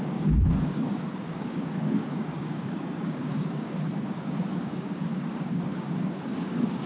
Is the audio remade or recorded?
remade